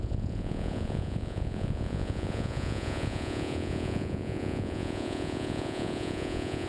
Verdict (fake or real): fake